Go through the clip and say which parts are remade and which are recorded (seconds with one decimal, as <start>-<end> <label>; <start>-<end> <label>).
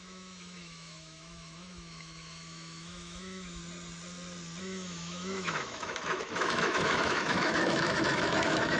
0.0-3.6 remade; 3.6-4.6 recorded; 4.6-8.8 remade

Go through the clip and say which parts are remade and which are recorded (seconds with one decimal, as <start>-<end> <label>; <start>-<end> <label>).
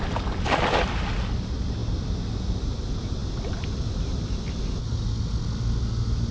0.0-6.3 recorded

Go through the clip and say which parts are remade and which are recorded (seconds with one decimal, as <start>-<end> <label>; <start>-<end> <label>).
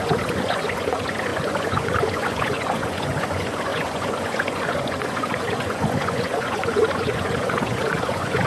0.0-8.5 remade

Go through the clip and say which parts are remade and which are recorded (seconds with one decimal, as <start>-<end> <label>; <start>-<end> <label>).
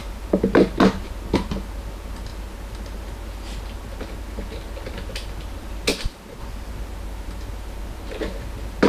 0.0-5.9 recorded; 5.9-6.4 remade; 6.4-8.9 recorded